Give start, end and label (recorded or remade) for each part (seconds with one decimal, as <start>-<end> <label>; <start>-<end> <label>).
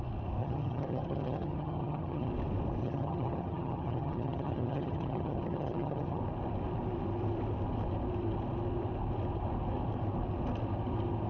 0.0-0.4 recorded; 0.4-2.3 remade; 2.3-2.8 recorded; 2.8-6.2 remade; 6.2-11.3 recorded